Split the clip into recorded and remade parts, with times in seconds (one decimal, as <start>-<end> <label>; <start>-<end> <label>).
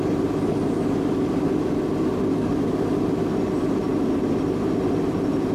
0.0-2.3 recorded; 2.3-3.0 remade; 3.0-5.5 recorded